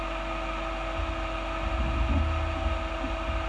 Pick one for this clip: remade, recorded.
recorded